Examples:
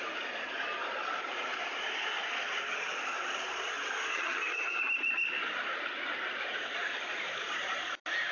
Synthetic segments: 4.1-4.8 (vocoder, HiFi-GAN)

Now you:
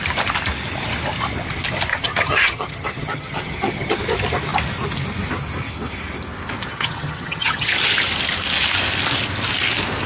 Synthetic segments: 1.9-4.0 (vocoder, HiFi-GAN); 6.7-7.7

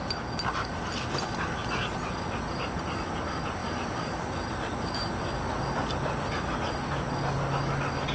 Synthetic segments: none

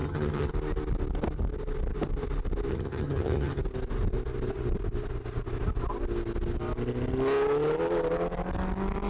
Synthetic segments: 0.0-0.5 (vocoder, HiFi-GAN); 2.7-3.6